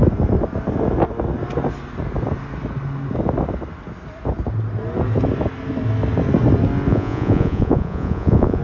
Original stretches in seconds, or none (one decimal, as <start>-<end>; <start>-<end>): 0.0-6.9